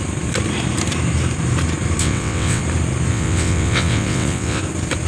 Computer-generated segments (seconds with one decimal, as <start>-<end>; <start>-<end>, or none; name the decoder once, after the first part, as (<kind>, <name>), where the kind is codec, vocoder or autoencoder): 2.0-2.6 (vocoder, WaveNeXt); 3.1-4.6